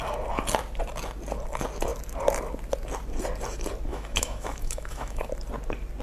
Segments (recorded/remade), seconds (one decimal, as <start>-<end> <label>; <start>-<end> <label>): 0.0-3.9 recorded; 3.9-5.3 remade; 5.3-6.0 recorded

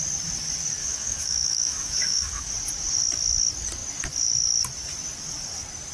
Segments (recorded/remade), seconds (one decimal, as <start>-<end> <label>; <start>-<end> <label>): 0.0-0.8 recorded; 0.8-2.5 remade; 2.5-5.9 recorded

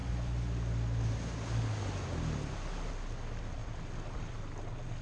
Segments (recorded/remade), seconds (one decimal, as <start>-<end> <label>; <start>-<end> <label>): 0.0-5.0 recorded

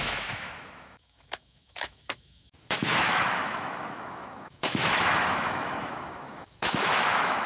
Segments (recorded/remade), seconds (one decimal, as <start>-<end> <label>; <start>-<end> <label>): 0.0-7.5 remade

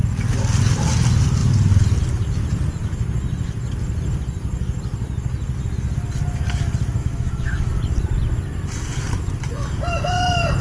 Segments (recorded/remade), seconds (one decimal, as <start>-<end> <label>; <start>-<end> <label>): 0.0-7.0 recorded; 7.0-7.7 remade; 7.7-10.6 recorded

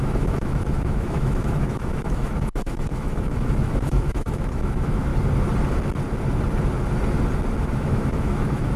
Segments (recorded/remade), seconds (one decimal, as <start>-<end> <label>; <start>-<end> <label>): 0.0-5.1 remade; 5.1-7.6 recorded; 7.6-8.8 remade